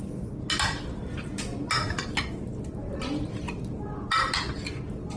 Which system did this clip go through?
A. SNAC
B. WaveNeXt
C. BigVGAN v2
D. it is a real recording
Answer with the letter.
D